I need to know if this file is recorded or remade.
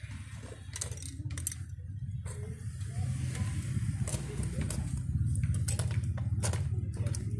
recorded